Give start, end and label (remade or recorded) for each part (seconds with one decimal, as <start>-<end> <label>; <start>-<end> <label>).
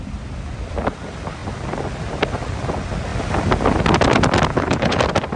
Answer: 0.0-4.5 recorded; 4.5-5.0 remade; 5.0-5.4 recorded